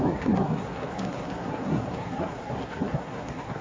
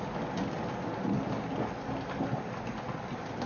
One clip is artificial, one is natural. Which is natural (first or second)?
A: second